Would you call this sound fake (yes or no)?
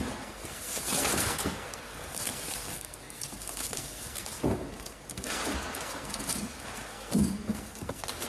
yes